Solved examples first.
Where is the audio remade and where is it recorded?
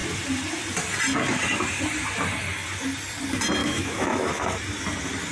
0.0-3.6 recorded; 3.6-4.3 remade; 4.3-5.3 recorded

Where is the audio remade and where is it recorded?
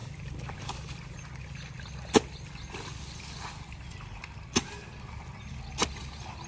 0.0-6.5 recorded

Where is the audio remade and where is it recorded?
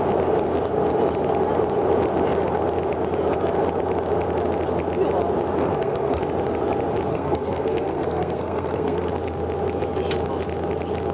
0.0-5.6 recorded; 5.6-6.2 remade; 6.2-7.1 recorded; 7.1-9.1 remade; 9.1-11.1 recorded